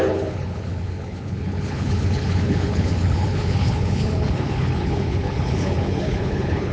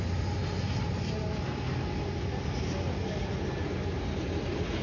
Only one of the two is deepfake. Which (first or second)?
first